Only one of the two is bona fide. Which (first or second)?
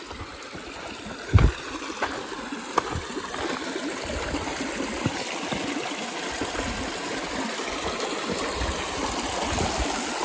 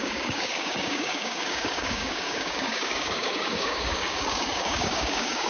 first